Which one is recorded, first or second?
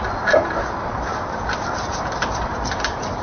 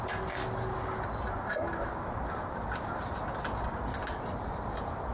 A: second